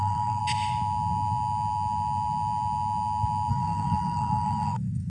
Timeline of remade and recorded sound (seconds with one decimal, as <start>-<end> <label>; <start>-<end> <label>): 0.0-0.4 remade; 0.4-3.5 recorded; 3.5-5.1 remade